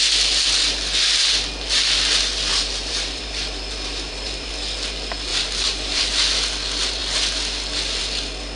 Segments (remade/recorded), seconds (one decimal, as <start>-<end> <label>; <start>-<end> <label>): 0.0-2.5 recorded; 2.5-4.5 remade; 4.5-5.3 recorded; 5.3-6.0 remade; 6.0-8.6 recorded